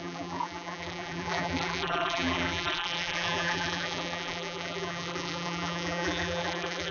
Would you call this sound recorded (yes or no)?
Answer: no